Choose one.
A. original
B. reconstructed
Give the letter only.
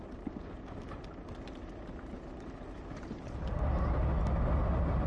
A